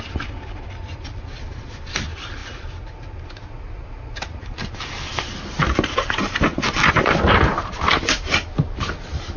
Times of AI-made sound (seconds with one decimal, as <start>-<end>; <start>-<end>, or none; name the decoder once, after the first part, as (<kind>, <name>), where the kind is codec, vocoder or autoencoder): none